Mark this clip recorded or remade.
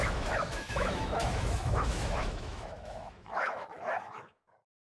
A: remade